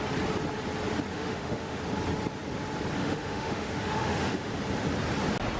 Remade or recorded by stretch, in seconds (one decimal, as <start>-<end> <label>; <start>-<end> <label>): 0.0-1.1 recorded; 1.1-1.8 remade; 1.8-3.0 recorded; 3.0-4.5 remade; 4.5-5.6 recorded